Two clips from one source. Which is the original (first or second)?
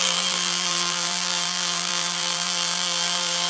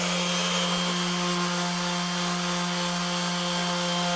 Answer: second